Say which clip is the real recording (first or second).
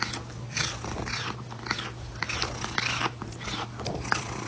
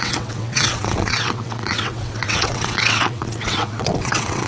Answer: first